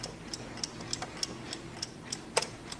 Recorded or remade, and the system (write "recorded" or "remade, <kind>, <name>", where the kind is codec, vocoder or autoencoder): recorded